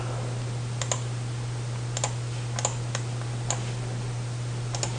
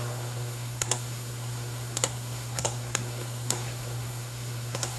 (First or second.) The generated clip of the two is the second